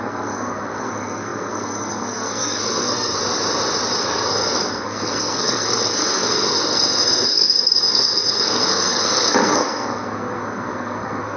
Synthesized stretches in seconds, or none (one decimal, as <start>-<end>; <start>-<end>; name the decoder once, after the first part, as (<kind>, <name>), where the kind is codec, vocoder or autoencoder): 0.0-3.2 (codec, SNAC); 4.0-11.4